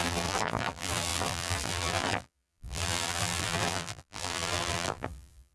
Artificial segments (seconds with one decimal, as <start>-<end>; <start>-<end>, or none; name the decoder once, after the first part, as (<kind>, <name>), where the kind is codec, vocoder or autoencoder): 0.0-5.5 (vocoder, BigVGAN v2)